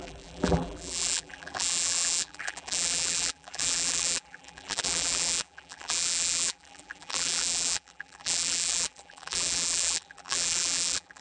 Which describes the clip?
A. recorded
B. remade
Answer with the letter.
B